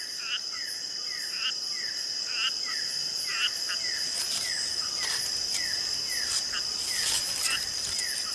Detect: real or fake real